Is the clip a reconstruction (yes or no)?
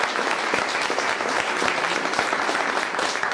yes